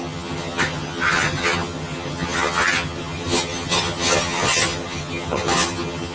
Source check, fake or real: fake